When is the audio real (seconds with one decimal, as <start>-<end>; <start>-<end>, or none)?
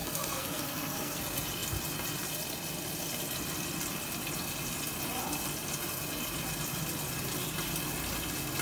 1.2-8.6